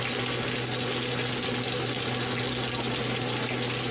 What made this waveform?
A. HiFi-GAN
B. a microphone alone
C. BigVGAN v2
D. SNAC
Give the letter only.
B